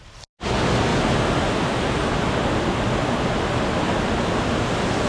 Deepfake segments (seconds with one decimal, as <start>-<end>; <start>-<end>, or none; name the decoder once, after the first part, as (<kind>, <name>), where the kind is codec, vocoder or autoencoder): none

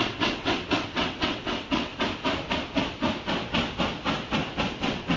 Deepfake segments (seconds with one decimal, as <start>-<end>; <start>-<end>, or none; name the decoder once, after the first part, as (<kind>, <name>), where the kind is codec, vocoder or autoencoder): 0.0-1.9 (vocoder, WaveNeXt); 4.8-5.2

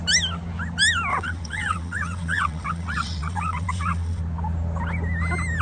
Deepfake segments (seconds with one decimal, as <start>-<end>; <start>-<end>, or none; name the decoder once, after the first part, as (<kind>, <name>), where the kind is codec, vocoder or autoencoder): 1.1-4.2 (vocoder, WaveNeXt)